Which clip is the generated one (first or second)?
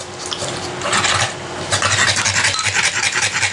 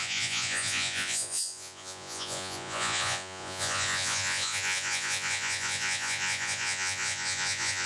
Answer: second